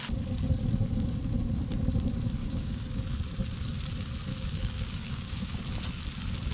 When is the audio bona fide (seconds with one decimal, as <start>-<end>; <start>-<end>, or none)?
0.0-2.4; 3.0-4.3; 5.6-6.5